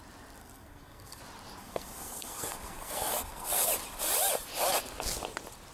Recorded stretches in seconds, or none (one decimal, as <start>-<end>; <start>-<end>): 0.0-0.4; 1.2-1.6; 3.7-5.7